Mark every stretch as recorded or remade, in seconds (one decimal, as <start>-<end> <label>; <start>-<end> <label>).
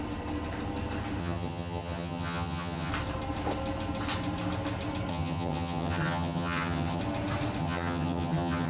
0.0-1.2 recorded; 1.2-2.9 remade; 2.9-5.1 recorded; 5.1-7.0 remade; 7.0-7.6 recorded; 7.6-8.7 remade